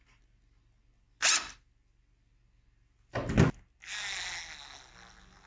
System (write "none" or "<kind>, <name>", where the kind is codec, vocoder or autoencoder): none